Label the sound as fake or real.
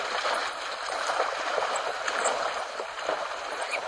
fake